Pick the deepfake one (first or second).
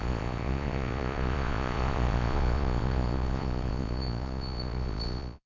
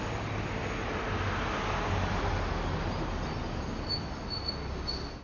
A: first